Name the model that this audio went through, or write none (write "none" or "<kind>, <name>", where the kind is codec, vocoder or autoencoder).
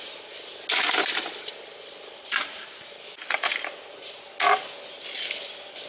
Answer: none